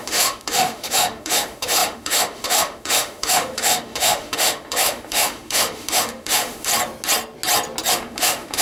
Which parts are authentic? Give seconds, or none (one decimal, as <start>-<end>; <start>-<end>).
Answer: 6.7-7.9